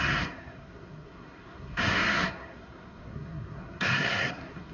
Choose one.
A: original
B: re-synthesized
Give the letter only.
B